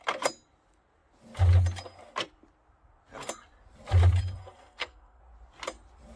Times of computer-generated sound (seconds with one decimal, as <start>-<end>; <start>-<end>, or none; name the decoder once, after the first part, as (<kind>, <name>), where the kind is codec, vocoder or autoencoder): 4.4-5.2 (codec, SNAC)